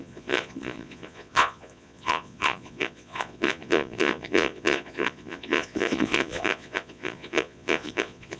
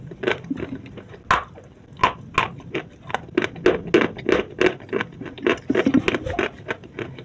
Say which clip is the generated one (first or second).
first